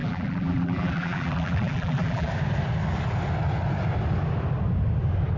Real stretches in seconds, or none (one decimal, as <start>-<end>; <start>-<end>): 2.3-5.4